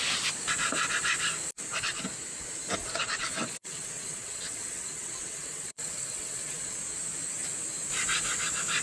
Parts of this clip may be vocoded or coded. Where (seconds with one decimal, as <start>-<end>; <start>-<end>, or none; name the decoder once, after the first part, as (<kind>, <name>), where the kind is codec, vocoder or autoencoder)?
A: 2.8-6.8 (vocoder, WaveNeXt)

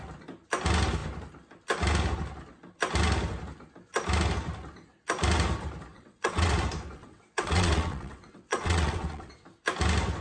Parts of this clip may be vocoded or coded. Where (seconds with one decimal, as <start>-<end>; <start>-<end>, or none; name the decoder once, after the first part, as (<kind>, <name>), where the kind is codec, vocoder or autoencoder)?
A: 5.9-6.5 (vocoder, WaveNeXt); 7.0-9.3

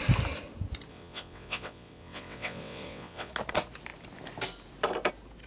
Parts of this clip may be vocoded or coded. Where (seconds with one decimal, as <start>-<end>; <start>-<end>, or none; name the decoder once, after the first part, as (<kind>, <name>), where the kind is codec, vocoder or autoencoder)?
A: 0.9-3.3 (vocoder, WaveNeXt)

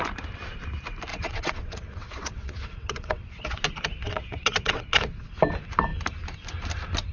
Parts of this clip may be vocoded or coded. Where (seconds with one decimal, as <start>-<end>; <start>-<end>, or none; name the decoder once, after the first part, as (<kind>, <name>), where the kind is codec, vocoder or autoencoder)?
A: 1.1-3.6 (vocoder, WaveNeXt); 4.0-5.3

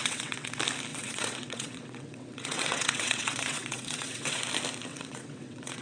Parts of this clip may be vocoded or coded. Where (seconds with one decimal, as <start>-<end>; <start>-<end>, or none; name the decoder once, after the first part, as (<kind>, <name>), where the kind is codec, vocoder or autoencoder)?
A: 0.0-0.5 (vocoder, WaveNeXt); 0.9-4.4; 4.9-5.8